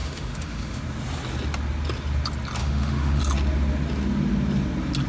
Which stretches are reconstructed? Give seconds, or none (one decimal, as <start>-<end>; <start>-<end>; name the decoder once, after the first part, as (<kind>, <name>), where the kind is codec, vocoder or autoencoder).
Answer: 0.0-0.8 (autoencoder, DAC-VAE); 2.6-3.2